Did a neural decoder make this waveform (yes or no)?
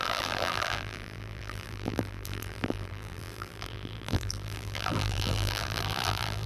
yes